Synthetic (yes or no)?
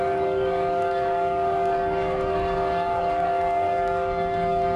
yes